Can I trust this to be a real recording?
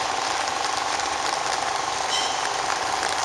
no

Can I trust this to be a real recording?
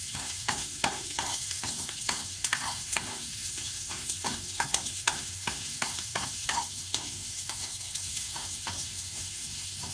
no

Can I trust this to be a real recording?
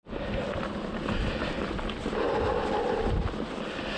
yes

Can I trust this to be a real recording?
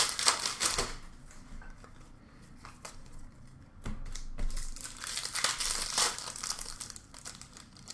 yes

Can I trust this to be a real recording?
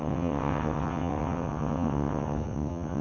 no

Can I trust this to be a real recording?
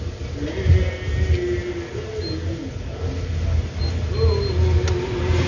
yes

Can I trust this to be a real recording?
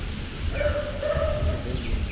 yes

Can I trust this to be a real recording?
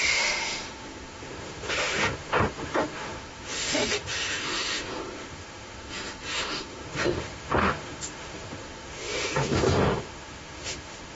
no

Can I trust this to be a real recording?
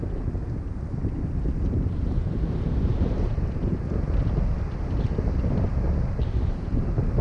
no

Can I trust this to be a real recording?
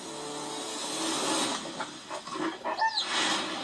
yes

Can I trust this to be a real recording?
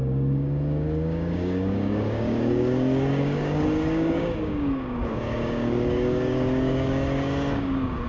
no